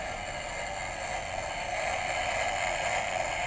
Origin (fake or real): real